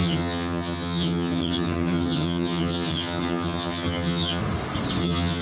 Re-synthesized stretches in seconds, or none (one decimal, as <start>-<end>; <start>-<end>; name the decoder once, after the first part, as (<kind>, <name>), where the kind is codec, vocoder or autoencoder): 0.0-4.4 (vocoder, HiFi-GAN); 5.0-5.4